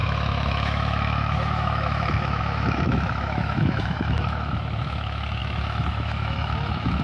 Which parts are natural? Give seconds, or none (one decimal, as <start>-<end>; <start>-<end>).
none